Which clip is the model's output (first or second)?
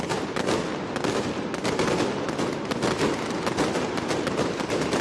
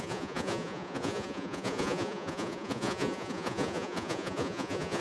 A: second